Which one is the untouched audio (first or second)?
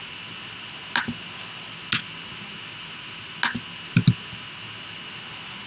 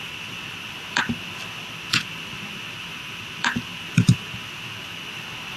first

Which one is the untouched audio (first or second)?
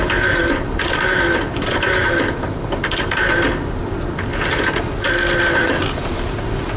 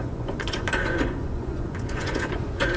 first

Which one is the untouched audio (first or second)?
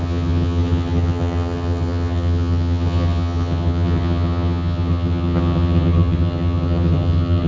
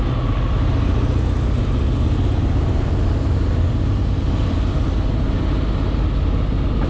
second